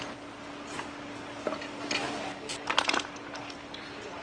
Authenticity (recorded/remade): recorded